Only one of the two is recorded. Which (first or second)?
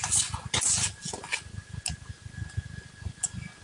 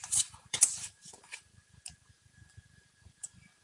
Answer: first